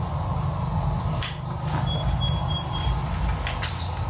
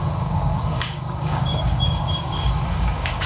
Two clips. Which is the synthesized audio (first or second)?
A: second